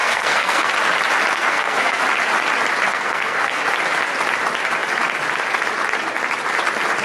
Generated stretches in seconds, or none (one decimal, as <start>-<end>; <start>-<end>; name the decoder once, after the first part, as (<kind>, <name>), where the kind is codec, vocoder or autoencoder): 0.0-0.7 (codec, SNAC); 1.3-2.0; 2.9-3.6